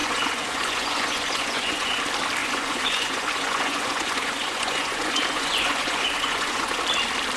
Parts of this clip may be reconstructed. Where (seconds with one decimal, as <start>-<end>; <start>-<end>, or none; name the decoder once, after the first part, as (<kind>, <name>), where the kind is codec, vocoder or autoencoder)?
0.0-2.0 (vocoder, Vocos); 2.4-6.8